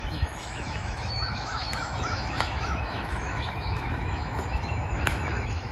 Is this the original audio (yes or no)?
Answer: no